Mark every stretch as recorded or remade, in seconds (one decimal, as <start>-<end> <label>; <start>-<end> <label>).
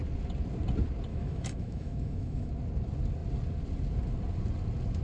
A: 0.0-1.1 recorded; 1.1-2.5 remade; 2.5-5.0 recorded